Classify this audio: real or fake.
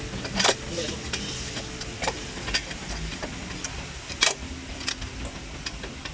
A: real